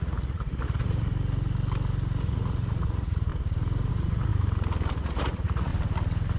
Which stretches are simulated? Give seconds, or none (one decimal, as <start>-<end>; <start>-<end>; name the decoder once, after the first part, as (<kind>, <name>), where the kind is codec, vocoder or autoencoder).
0.0-1.1 (vocoder, Vocos); 2.2-3.3; 3.9-4.3; 5.0-5.7